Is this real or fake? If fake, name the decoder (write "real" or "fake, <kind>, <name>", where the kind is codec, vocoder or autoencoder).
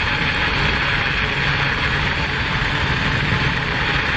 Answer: fake, vocoder, BigVGAN v2